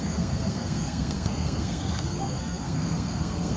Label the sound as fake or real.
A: fake